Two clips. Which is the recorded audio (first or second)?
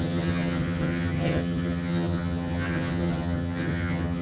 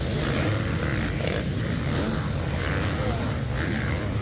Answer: second